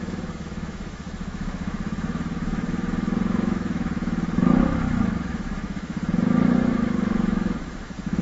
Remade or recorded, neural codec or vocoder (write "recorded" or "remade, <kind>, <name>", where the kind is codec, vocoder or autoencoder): remade, autoencoder, DAC-VAE